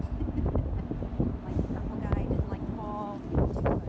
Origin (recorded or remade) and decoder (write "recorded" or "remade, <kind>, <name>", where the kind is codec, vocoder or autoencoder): recorded